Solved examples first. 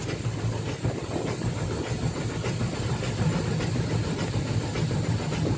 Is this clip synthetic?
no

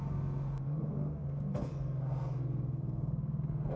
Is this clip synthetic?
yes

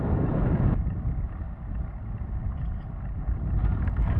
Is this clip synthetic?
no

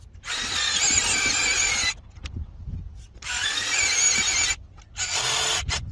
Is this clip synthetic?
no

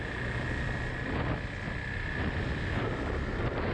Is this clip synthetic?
no